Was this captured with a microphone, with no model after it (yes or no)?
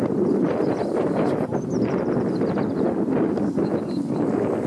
yes